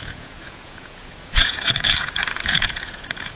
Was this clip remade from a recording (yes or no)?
yes